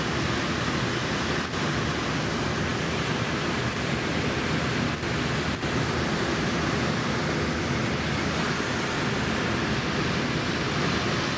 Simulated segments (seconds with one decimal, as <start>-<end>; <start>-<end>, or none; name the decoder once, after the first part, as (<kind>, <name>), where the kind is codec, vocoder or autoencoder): 2.7-3.9 (vocoder, BigVGAN v2)